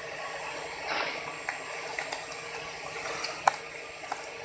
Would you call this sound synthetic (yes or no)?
no